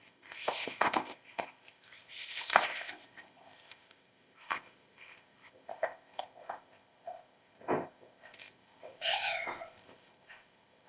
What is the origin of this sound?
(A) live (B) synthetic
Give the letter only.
B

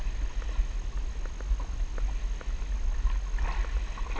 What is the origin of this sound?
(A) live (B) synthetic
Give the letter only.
A